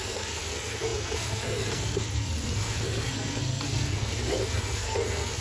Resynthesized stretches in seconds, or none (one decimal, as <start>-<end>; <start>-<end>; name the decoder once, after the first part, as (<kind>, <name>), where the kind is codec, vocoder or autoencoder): 0.0-5.4 (codec, SNAC)